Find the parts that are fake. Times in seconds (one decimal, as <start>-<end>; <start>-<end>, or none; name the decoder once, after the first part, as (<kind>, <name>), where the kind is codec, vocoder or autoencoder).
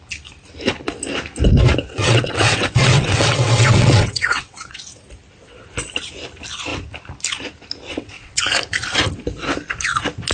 1.9-4.8 (vocoder, WaveNeXt); 7.9-8.4